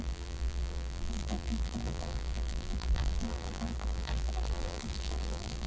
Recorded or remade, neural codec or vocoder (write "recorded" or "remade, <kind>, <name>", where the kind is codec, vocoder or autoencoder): remade, vocoder, BigVGAN v2